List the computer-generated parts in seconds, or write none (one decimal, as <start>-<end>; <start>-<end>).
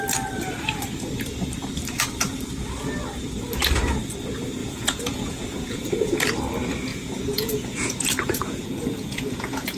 4.6-6.2; 6.9-9.8